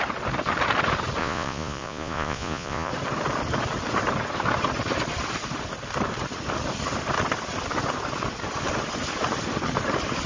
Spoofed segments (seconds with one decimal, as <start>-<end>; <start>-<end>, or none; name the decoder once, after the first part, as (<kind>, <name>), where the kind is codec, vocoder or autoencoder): 1.2-2.9 (vocoder, Vocos)